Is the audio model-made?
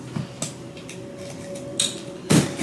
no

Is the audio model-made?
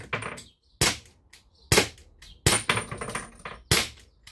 no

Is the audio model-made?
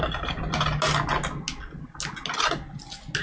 no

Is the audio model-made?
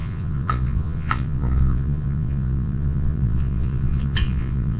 yes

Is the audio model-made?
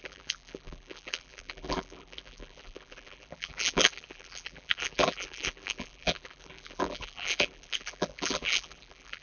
yes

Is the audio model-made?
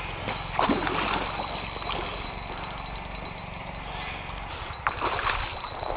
no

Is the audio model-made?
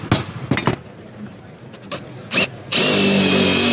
no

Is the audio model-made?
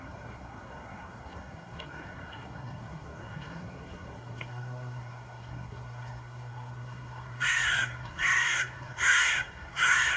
yes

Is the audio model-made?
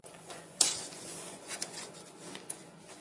yes